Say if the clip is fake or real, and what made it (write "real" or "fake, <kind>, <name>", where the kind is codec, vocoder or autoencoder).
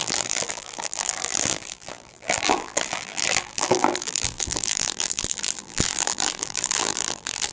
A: fake, vocoder, BigVGAN v2